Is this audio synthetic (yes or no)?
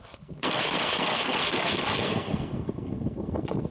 yes